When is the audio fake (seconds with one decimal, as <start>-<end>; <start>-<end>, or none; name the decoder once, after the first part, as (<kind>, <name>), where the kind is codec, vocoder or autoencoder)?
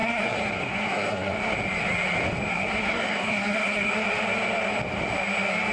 0.0-1.3 (codec, SNAC); 2.5-3.9